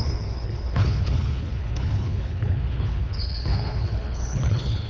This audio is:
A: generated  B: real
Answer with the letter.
A